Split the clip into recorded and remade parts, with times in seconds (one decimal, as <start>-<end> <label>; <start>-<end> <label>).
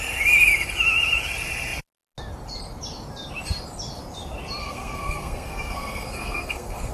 0.0-4.6 recorded; 4.6-6.9 remade